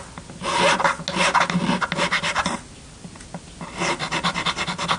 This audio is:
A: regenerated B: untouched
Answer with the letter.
B